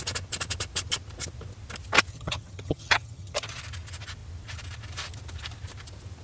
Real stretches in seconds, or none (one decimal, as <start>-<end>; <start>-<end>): 0.0-2.1; 3.6-6.2